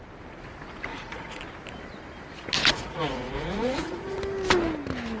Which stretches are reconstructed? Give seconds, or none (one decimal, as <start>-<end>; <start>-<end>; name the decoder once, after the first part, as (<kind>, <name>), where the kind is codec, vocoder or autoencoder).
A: 0.9-1.4 (vocoder, Vocos); 2.7-4.2